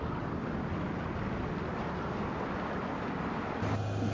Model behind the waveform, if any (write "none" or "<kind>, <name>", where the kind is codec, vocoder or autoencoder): none